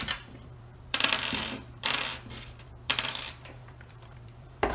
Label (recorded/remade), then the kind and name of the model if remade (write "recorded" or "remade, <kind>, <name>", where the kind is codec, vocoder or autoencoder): remade, vocoder, BigVGAN v2